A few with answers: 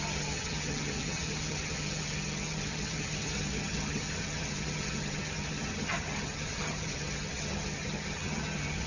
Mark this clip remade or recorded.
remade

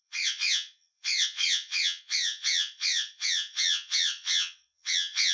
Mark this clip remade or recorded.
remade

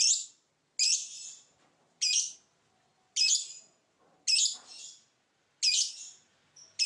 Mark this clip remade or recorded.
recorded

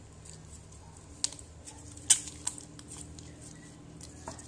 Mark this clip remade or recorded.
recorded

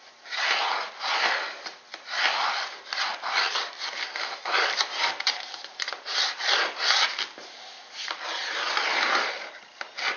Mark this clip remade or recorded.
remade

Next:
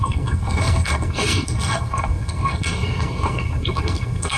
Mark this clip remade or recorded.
remade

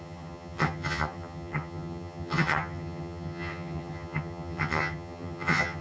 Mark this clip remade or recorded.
remade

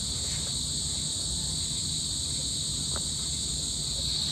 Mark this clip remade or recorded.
recorded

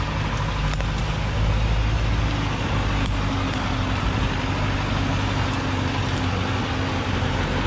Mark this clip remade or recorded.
recorded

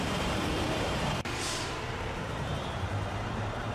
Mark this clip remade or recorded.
remade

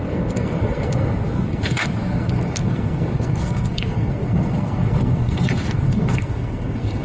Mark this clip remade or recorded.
remade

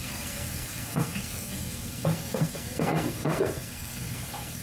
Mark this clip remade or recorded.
remade